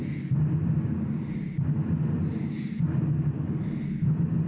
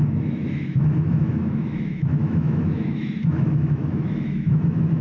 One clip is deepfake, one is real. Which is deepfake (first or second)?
second